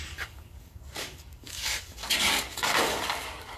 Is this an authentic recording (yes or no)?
no